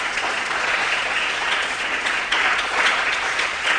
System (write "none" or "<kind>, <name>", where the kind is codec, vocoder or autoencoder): vocoder, Vocos